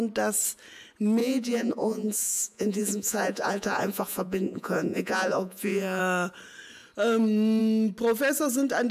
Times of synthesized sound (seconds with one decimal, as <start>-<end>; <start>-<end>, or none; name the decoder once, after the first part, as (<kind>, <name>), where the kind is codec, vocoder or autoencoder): 1.2-6.0 (vocoder, Vocos)